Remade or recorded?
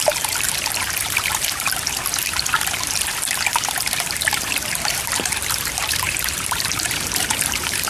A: remade